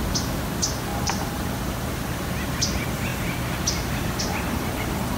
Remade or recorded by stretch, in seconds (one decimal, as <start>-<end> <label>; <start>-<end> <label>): 0.0-0.9 recorded; 0.9-2.6 remade; 2.6-5.2 recorded